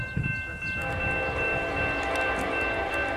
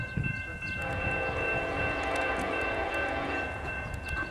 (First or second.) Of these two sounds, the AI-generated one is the second